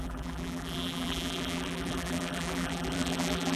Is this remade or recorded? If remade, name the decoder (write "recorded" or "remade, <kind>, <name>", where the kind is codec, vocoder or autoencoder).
remade, vocoder, BigVGAN v2